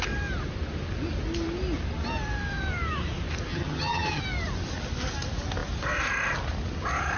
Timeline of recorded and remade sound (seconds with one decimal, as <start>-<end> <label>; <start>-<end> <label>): 0.0-3.5 recorded; 3.5-4.2 remade; 4.2-7.2 recorded